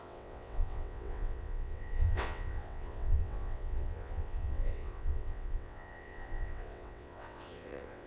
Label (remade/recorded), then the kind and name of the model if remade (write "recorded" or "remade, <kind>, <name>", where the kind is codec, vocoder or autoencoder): remade, vocoder, WaveNeXt